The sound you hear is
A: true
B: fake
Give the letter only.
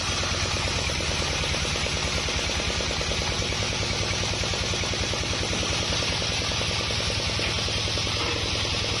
A